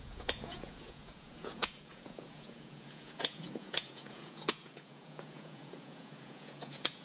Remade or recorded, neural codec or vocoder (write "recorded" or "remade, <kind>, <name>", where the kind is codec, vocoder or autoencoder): remade, vocoder, Vocos